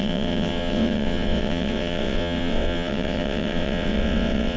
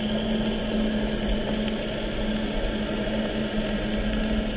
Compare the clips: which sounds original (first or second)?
second